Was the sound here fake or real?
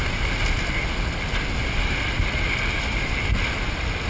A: real